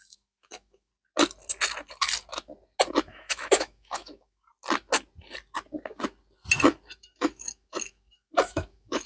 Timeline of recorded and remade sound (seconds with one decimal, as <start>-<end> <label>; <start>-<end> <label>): 0.0-0.9 remade; 0.9-2.9 recorded; 2.9-4.5 remade; 4.5-7.0 recorded; 7.0-9.1 remade